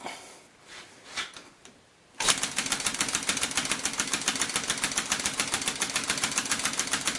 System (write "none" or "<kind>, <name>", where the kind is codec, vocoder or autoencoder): none